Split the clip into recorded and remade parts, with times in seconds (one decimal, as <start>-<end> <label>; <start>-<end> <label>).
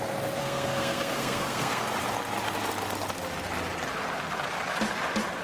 0.0-0.4 recorded; 0.4-1.8 remade; 1.8-5.4 recorded